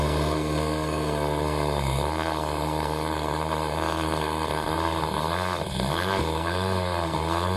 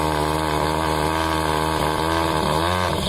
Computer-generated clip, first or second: first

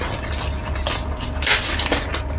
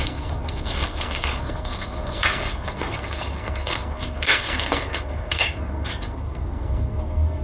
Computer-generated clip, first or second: second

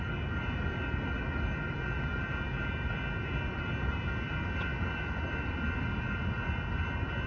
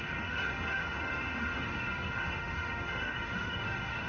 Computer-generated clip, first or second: second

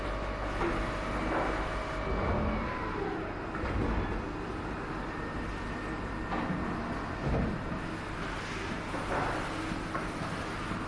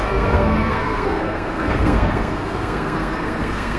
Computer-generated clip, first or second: second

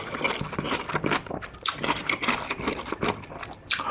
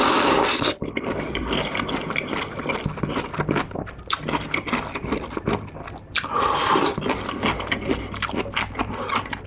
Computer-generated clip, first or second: first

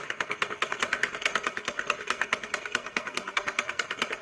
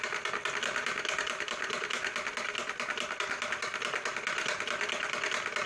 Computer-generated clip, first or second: first